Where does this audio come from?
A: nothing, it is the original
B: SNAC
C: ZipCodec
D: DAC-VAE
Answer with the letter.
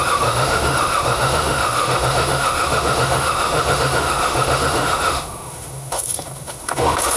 D